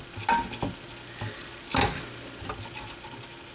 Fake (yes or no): no